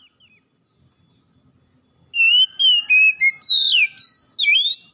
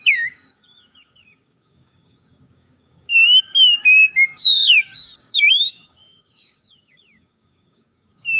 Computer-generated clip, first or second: second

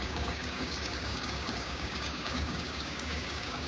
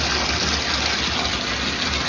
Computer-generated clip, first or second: first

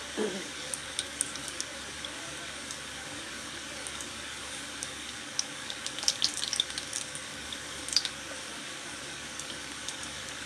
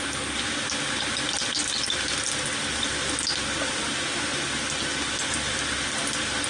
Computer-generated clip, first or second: first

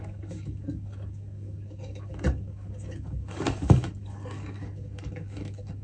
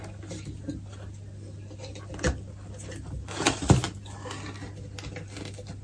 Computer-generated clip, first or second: first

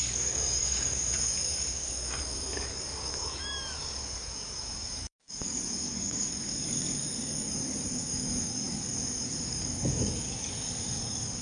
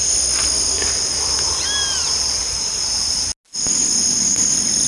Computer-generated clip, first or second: first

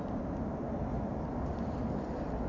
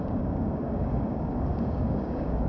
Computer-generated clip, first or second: second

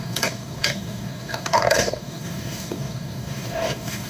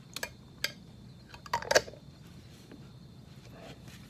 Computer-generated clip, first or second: first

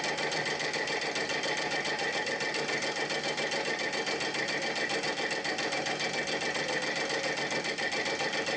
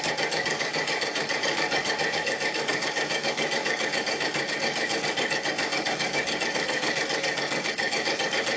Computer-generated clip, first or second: second